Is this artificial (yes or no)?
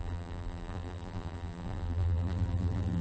yes